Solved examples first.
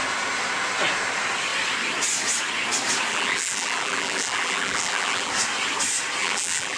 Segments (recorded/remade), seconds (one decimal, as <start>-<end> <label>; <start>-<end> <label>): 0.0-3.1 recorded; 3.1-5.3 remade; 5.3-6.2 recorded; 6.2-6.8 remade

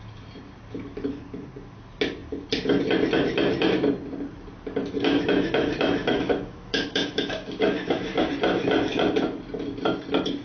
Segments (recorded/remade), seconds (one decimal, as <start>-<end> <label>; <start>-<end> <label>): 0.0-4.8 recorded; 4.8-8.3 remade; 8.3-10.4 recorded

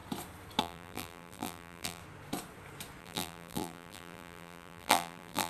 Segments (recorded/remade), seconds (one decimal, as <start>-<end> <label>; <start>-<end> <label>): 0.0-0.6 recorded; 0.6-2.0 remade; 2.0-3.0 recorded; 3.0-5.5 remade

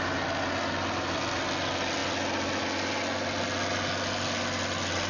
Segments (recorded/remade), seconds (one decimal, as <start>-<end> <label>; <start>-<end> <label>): 0.0-5.1 recorded

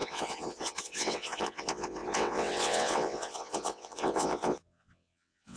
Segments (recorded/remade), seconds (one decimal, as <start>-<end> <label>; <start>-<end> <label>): 0.0-5.6 remade

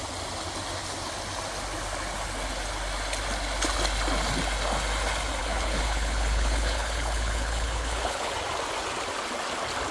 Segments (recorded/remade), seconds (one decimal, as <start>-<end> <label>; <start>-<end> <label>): 0.0-5.4 recorded; 5.4-8.3 remade; 8.3-9.9 recorded

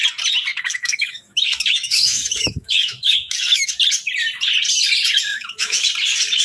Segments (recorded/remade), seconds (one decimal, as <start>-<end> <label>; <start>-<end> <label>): 0.0-0.5 recorded; 0.5-3.7 remade; 3.7-5.3 recorded; 5.3-5.9 remade; 5.9-6.4 recorded